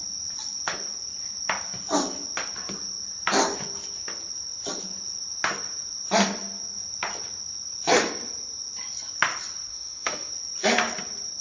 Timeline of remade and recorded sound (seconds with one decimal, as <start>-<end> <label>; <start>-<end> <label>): 0.0-9.7 recorded; 9.7-10.3 remade; 10.3-11.4 recorded